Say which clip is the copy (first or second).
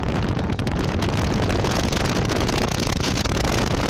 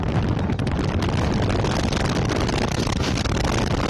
first